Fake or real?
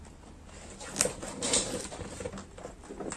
real